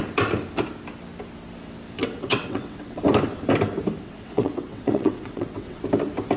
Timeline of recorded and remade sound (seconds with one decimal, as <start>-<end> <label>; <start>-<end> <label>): 0.0-2.0 recorded; 2.0-3.0 remade; 3.0-4.0 recorded; 4.0-5.8 remade; 5.8-6.4 recorded